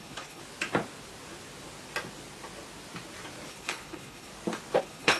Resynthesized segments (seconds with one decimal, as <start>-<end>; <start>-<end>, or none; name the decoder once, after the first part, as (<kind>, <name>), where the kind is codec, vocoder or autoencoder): 0.0-0.4 (codec, HILCodec); 3.5-4.3; 4.8-5.2